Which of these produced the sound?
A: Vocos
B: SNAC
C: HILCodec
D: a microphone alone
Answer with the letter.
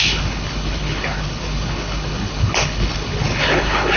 C